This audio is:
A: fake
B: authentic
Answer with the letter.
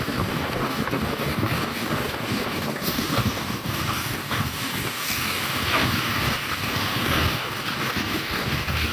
A